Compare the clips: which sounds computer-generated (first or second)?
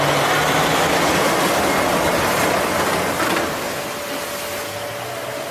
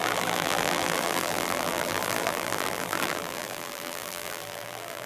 second